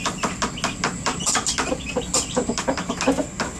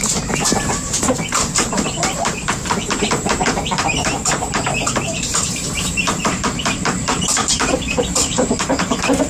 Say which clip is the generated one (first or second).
second